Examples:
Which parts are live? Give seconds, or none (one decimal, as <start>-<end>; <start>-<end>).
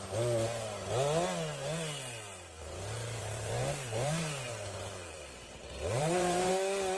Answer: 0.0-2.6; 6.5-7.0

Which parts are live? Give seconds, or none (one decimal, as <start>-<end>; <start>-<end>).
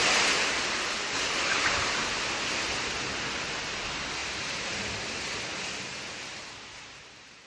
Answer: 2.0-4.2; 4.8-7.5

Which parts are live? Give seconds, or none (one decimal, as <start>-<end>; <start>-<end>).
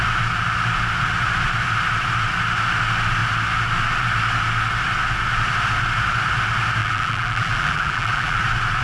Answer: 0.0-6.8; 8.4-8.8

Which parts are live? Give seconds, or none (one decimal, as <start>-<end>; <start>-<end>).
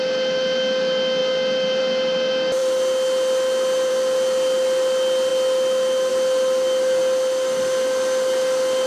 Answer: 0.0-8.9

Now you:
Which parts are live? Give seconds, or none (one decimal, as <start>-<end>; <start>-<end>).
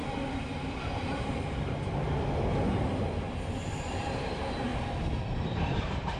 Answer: 0.0-3.7; 4.7-5.4